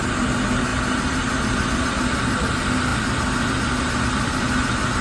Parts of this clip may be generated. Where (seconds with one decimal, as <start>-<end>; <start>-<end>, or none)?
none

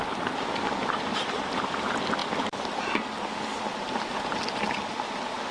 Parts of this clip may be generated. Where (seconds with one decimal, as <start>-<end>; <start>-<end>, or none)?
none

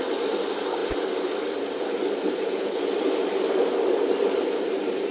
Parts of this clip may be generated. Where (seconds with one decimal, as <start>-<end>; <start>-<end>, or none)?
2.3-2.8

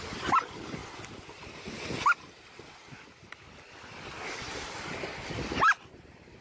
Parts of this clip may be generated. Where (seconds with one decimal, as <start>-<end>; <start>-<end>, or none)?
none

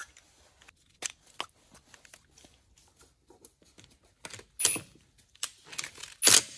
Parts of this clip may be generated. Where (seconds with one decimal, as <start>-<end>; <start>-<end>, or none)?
none

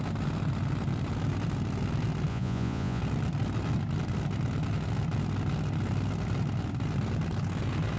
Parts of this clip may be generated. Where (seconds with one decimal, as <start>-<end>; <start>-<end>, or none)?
2.3-3.0

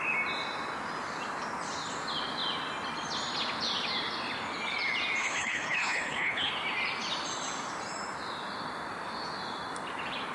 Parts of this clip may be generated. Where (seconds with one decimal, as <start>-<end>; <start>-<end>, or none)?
5.2-6.5